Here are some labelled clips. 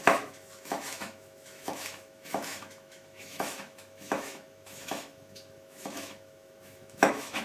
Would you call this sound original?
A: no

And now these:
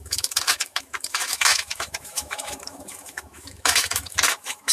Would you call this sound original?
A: no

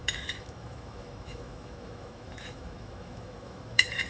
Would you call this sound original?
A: no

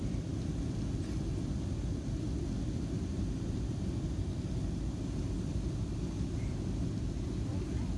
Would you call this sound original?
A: yes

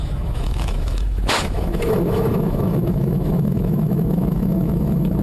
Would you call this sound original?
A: no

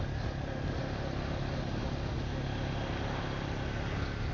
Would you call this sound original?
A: yes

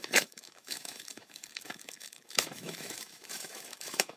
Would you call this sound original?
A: no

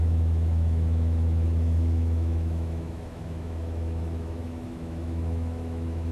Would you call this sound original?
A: no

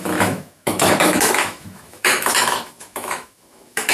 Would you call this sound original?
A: no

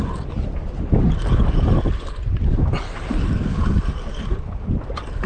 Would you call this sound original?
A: yes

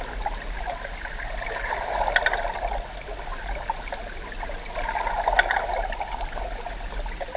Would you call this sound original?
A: yes